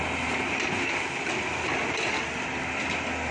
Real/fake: real